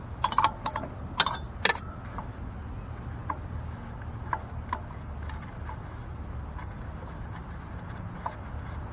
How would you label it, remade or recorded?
recorded